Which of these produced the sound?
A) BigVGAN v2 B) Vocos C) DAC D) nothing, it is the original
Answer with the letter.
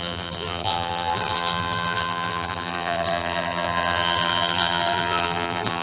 A